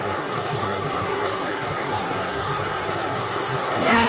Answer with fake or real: fake